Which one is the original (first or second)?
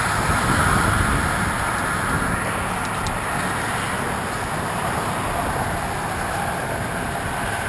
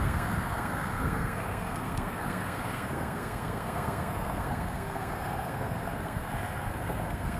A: first